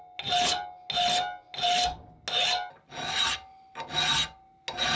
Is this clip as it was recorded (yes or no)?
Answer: yes